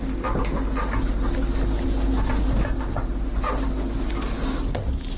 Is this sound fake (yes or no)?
no